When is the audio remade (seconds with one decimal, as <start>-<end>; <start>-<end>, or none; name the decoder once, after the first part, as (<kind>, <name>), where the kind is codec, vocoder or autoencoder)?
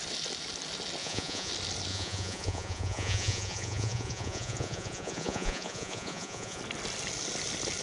1.0-1.5 (vocoder, Vocos); 1.9-6.6